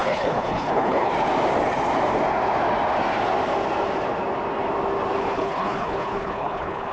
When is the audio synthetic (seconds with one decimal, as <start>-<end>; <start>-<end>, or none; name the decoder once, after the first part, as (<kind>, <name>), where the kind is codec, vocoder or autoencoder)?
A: 0.0-1.1 (codec, HILCodec); 5.2-6.9